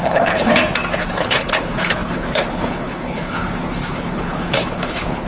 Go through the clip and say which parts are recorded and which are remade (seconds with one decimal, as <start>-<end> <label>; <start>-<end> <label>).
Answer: 0.0-0.5 remade; 0.5-1.0 recorded; 1.0-5.3 remade